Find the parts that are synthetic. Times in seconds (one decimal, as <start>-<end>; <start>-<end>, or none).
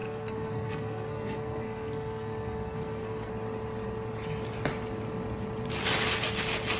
0.0-3.3